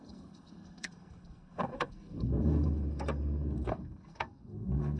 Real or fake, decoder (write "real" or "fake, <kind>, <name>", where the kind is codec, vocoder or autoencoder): fake, codec, SNAC